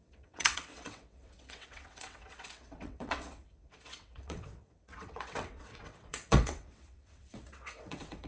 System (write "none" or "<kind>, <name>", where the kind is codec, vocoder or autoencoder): vocoder, WaveNeXt